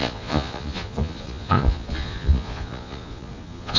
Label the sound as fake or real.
fake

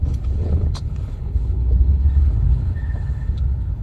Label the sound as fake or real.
fake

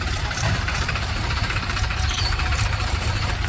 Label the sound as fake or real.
fake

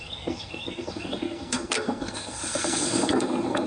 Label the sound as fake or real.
fake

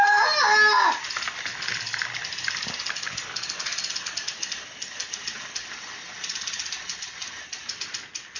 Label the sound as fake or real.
real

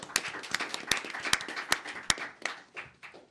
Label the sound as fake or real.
real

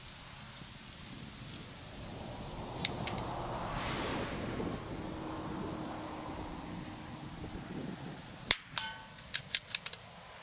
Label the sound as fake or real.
real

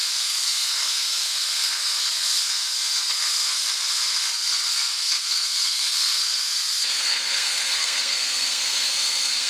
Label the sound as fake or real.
fake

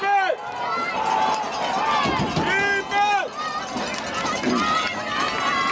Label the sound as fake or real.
real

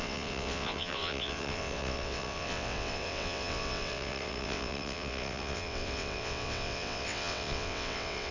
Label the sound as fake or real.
fake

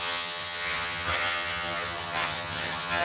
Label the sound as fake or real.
fake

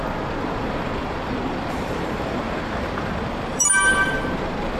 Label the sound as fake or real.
fake